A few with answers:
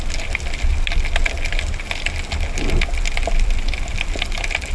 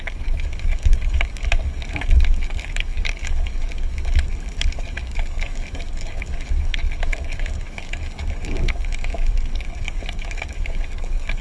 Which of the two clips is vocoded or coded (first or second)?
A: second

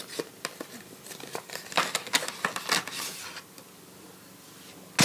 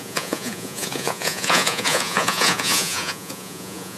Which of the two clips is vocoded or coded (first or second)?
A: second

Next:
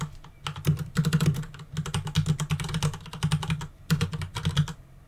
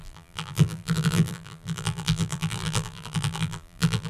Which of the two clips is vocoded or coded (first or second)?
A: second